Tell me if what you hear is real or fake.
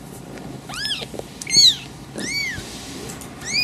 fake